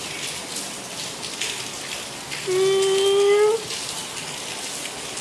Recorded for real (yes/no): yes